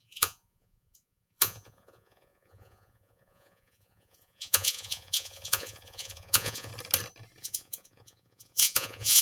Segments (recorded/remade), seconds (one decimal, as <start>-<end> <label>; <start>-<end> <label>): 0.0-6.7 remade; 6.7-7.4 recorded; 7.4-9.2 remade